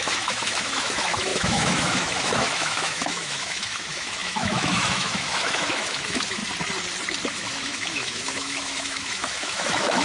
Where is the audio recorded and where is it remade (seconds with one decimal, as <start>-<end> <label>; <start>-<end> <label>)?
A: 0.0-6.4 remade; 6.4-7.3 recorded; 7.3-10.0 remade